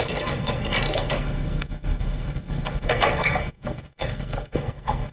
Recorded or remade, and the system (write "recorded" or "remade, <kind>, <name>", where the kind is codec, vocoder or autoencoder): remade, codec, SNAC